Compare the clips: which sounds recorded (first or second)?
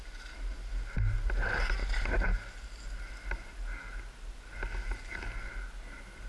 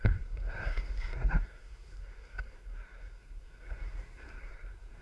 first